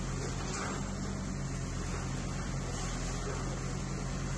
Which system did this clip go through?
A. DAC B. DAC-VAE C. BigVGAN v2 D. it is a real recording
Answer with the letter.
D